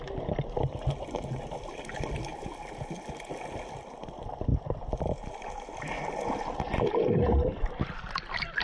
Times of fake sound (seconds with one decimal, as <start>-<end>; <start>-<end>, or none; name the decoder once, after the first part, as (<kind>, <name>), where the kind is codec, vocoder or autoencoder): none